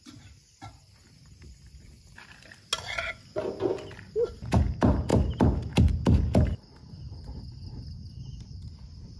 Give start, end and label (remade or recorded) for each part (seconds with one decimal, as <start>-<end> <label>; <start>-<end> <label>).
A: 0.0-9.2 recorded